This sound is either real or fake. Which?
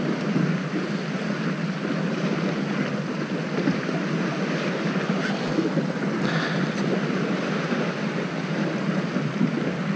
real